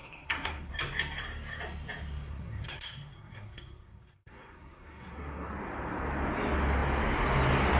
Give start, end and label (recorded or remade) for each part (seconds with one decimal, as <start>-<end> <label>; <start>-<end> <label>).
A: 0.0-0.7 remade; 0.7-2.3 recorded; 2.3-5.5 remade; 5.5-7.8 recorded

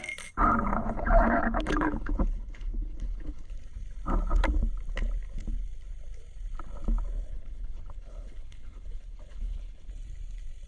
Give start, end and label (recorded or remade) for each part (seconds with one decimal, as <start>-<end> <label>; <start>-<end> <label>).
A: 0.0-0.7 recorded; 0.7-3.5 remade; 3.5-7.3 recorded; 7.3-9.9 remade; 9.9-10.7 recorded

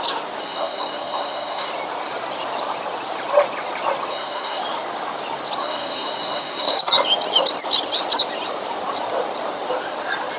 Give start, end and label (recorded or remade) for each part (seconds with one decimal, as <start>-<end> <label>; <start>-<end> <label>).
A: 0.0-0.4 recorded; 0.4-1.7 remade; 1.7-4.1 recorded; 4.1-4.6 remade; 4.6-5.6 recorded; 5.6-6.9 remade; 6.9-10.4 recorded

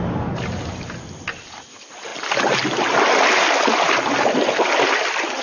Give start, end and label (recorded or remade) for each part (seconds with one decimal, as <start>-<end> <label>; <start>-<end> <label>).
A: 0.0-5.4 recorded